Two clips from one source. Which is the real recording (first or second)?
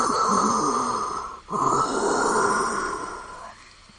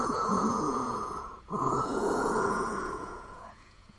first